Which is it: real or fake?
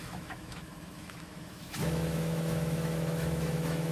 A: fake